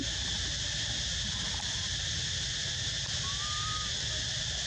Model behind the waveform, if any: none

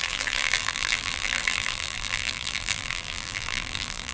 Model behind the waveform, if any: vocoder, BigVGAN v2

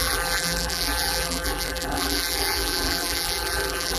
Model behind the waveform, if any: vocoder, BigVGAN v2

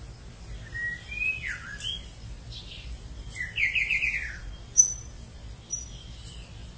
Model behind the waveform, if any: none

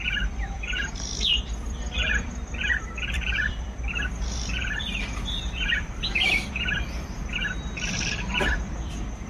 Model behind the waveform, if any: vocoder, BigVGAN v2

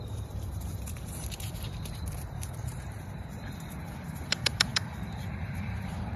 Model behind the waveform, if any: vocoder, BigVGAN v2